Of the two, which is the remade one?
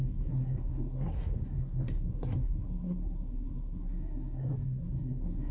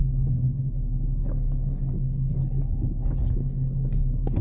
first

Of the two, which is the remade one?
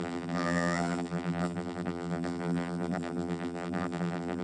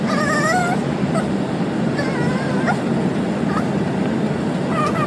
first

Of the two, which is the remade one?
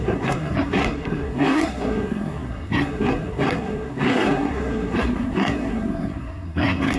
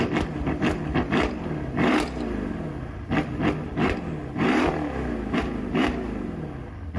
first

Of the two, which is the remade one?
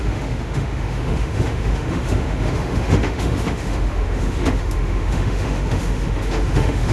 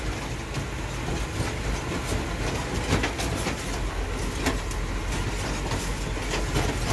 first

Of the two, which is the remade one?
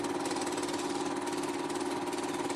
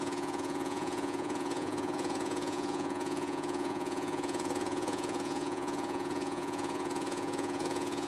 second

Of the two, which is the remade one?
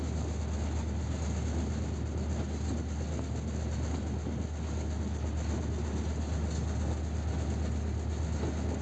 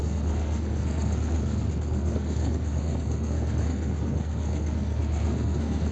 second